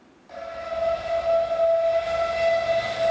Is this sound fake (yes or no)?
no